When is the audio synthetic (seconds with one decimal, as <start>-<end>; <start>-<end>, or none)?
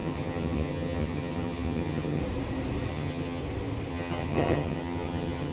0.0-2.2; 2.9-3.4; 3.9-5.5